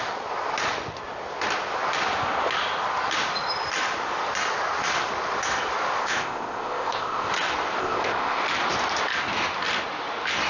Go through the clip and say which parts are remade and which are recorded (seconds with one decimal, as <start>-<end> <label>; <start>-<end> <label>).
0.0-6.0 recorded; 6.0-7.3 remade; 7.3-7.8 recorded; 7.8-8.4 remade; 8.4-10.5 recorded